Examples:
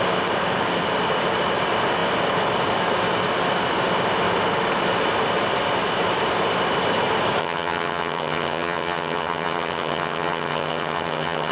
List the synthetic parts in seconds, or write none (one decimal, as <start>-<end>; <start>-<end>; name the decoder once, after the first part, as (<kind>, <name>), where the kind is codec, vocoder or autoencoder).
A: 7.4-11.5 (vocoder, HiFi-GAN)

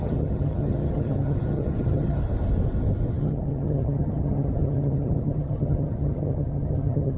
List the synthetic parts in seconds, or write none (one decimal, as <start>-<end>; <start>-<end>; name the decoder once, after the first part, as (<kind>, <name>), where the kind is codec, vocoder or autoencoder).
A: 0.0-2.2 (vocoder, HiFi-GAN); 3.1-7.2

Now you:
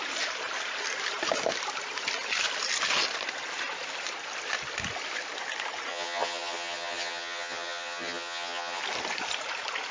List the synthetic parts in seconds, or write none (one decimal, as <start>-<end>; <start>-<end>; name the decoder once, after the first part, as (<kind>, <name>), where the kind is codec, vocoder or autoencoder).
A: 5.9-8.8 (vocoder, HiFi-GAN)

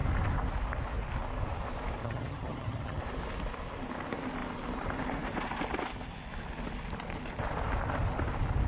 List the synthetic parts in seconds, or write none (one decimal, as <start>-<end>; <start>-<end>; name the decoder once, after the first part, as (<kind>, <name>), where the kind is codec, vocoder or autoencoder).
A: 2.0-3.0 (vocoder, HiFi-GAN)